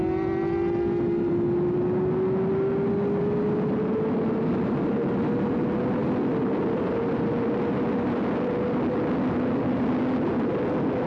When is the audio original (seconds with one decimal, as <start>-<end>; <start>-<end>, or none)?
0.0-11.1